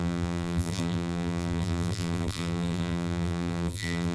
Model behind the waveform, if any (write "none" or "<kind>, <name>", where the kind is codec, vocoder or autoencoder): vocoder, BigVGAN v2